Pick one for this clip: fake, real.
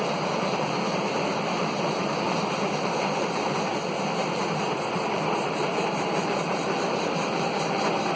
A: fake